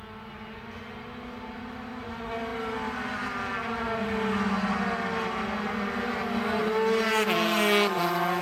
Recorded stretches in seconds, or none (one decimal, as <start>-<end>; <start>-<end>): 0.0-8.4